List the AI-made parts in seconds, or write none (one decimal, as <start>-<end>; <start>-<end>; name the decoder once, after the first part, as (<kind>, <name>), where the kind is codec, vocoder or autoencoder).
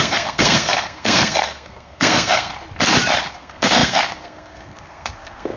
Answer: 0.0-2.5 (codec, SNAC); 3.3-5.6